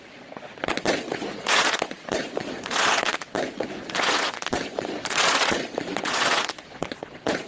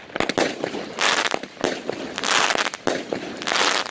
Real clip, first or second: second